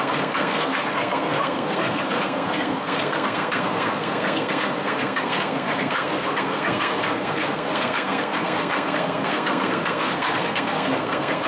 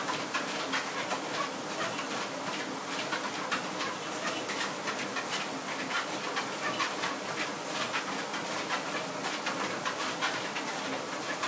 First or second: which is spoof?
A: first